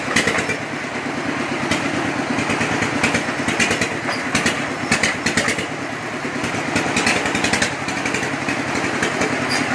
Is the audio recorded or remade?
recorded